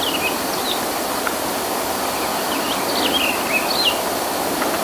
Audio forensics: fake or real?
real